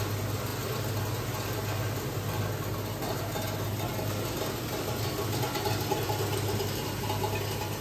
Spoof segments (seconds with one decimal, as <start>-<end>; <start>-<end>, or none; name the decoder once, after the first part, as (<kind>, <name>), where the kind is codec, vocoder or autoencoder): none